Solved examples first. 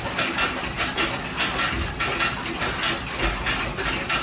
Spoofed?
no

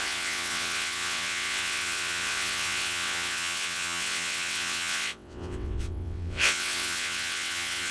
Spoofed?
yes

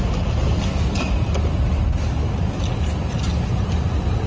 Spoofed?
no